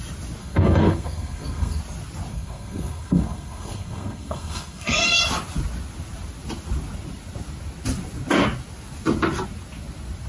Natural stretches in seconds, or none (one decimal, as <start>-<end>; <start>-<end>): 0.0-0.4; 1.8-2.3; 5.2-10.3